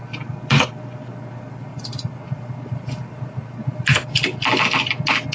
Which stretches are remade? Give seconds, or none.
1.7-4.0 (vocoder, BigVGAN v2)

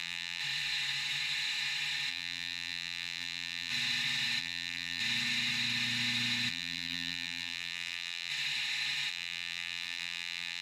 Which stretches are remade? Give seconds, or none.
0.0-0.4 (vocoder, BigVGAN v2); 2.1-3.7; 4.4-5.0; 6.5-8.3; 9.1-10.6

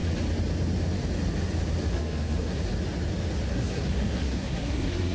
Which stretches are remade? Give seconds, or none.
1.9-2.7 (codec, SNAC); 3.5-5.1

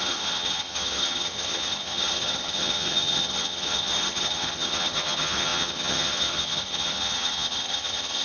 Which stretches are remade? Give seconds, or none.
0.0-8.2 (vocoder, HiFi-GAN)

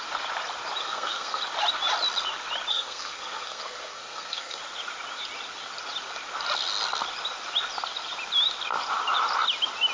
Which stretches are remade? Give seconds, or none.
0.8-1.4 (codec, SNAC); 2.7-4.6